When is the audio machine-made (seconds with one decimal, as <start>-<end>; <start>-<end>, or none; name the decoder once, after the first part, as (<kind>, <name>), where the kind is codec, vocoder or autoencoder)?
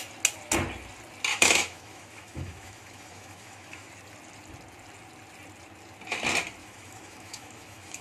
1.3-3.9 (autoencoder, DAC-VAE); 6.6-8.0